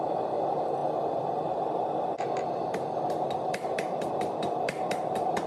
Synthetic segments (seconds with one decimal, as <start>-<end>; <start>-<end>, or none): none